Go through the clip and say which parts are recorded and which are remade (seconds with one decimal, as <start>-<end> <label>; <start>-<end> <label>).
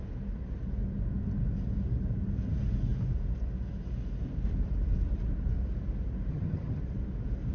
0.0-6.3 recorded; 6.3-6.8 remade; 6.8-7.5 recorded